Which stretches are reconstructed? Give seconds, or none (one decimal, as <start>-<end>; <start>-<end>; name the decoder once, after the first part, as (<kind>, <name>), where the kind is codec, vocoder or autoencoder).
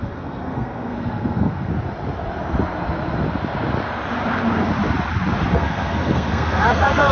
0.0-1.7 (codec, SNAC); 5.5-7.1